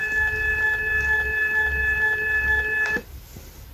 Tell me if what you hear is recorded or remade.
recorded